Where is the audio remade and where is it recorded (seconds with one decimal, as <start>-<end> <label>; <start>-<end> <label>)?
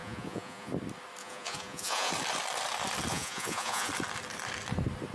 0.0-0.7 remade; 0.7-1.2 recorded; 1.2-2.1 remade; 2.1-3.1 recorded; 3.1-3.9 remade; 3.9-5.1 recorded